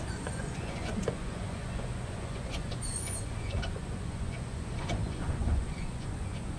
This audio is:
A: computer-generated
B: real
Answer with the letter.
A